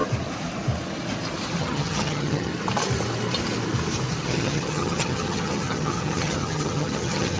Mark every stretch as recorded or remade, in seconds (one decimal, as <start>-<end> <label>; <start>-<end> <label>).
0.0-1.6 recorded; 1.6-2.5 remade; 2.5-4.2 recorded; 4.2-7.4 remade